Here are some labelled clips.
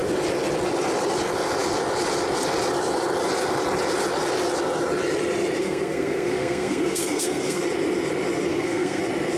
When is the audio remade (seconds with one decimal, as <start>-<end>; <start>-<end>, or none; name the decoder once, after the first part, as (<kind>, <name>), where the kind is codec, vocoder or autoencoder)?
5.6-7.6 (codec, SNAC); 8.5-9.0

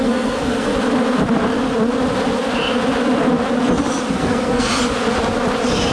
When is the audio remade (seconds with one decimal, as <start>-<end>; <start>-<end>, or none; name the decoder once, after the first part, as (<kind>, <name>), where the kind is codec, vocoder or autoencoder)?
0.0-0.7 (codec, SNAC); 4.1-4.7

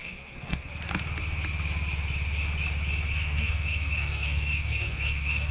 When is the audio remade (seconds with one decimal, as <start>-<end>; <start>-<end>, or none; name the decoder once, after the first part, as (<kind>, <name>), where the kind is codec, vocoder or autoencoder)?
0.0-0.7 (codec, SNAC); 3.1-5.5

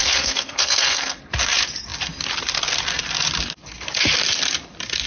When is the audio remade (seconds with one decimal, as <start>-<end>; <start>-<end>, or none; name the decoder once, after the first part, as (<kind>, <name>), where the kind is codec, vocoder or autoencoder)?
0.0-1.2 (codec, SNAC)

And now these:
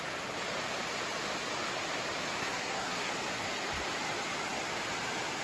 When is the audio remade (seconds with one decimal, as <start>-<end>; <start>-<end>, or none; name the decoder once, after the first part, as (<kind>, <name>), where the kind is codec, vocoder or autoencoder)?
2.4-3.1 (codec, SNAC)